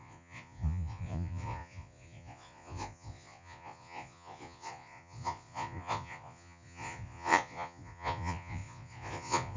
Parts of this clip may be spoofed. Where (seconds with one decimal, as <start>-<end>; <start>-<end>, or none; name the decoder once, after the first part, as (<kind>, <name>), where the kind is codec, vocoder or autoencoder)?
0.0-9.6 (vocoder, Vocos)